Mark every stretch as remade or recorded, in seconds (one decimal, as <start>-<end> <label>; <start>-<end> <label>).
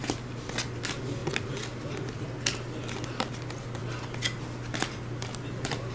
0.0-5.9 recorded